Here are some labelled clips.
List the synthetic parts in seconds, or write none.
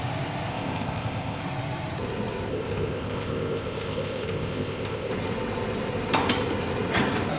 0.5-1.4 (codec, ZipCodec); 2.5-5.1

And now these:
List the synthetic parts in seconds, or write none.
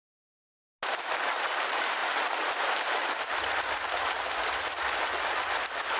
none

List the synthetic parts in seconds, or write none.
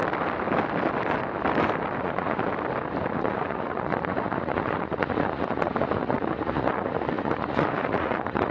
2.0-2.5 (vocoder, Vocos); 3.1-8.5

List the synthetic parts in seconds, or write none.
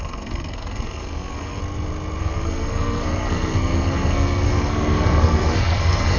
0.0-1.6 (codec, SNAC); 2.2-6.2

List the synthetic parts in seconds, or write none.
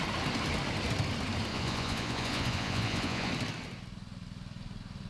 1.5-3.3 (vocoder, Vocos)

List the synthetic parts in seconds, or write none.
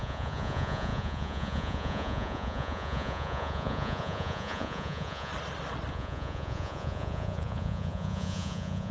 0.0-5.3 (vocoder, Vocos); 5.9-8.9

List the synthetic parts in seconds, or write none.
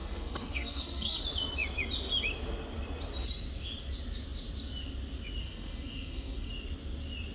0.0-1.2 (codec, SNAC); 5.4-6.5